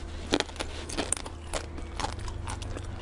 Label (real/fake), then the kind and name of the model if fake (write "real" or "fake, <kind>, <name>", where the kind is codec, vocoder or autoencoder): real